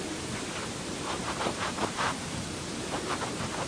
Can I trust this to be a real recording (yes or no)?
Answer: no